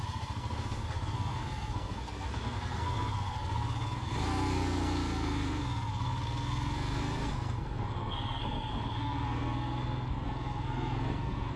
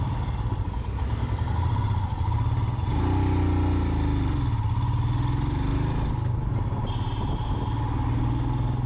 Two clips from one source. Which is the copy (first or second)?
first